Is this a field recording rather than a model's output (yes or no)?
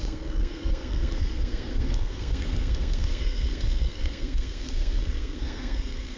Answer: no